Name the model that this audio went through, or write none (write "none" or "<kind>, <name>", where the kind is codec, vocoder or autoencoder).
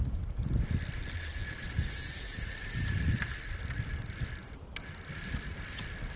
none